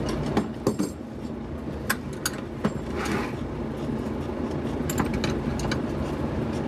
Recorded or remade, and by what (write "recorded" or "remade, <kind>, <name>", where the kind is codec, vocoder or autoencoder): recorded